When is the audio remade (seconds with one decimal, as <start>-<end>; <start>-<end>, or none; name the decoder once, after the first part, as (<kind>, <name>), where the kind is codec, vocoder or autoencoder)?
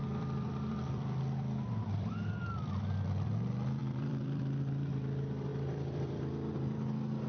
0.0-3.3 (vocoder, BigVGAN v2); 3.8-4.4; 5.5-6.2